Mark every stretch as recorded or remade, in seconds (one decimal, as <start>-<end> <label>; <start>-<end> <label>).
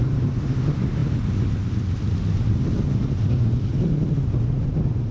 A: 0.0-5.1 recorded